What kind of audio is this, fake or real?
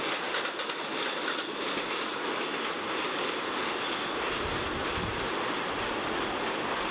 real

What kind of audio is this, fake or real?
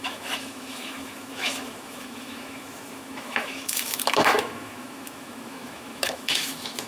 fake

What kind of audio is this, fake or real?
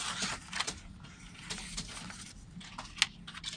real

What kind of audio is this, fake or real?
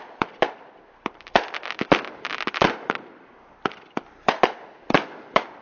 fake